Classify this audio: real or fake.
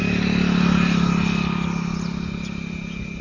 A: real